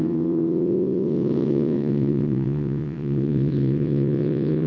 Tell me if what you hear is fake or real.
fake